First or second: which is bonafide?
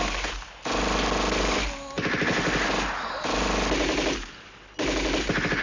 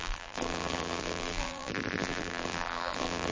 first